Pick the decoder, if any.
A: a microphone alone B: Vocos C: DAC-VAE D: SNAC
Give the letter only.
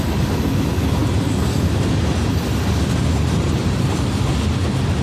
A